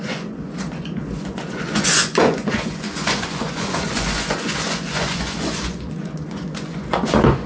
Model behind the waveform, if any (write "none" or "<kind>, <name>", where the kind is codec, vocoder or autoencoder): vocoder, Vocos